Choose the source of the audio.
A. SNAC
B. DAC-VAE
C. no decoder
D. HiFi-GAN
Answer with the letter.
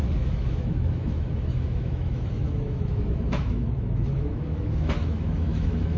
B